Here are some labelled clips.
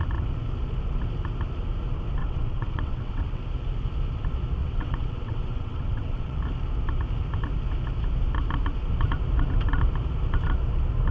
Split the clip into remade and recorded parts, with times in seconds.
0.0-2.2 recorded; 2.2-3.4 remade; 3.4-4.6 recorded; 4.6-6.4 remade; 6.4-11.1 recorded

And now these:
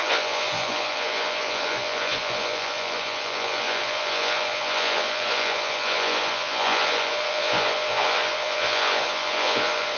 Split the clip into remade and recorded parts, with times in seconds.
0.0-10.0 remade